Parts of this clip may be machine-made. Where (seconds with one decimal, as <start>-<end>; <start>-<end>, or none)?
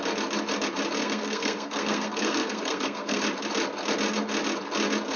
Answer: 1.0-3.2